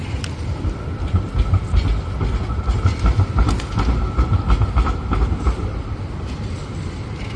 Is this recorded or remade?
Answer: recorded